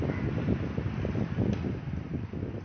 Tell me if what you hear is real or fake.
real